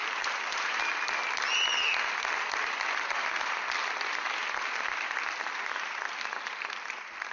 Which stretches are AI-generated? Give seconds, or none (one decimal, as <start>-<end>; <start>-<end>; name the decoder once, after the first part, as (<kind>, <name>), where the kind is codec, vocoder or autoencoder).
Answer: 0.0-0.8 (vocoder, BigVGAN v2)